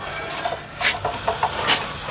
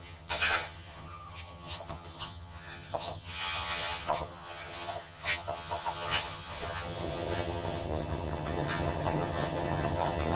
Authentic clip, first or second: first